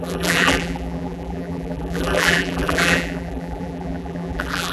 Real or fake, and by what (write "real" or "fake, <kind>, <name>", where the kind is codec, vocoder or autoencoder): fake, vocoder, BigVGAN v2